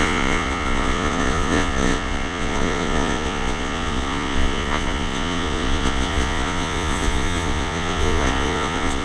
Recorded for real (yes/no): no